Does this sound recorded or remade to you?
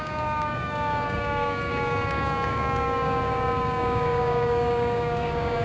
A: remade